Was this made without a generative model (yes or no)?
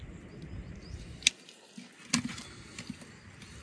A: yes